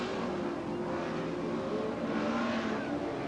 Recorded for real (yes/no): yes